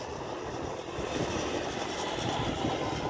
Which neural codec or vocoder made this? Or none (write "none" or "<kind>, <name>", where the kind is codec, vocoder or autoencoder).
vocoder, BigVGAN v2